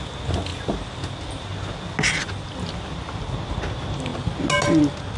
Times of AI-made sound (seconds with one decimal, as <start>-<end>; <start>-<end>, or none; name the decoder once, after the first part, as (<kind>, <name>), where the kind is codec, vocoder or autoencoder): none